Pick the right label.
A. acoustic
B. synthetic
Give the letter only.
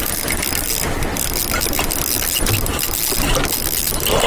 A